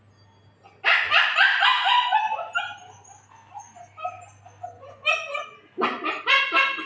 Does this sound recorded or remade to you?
recorded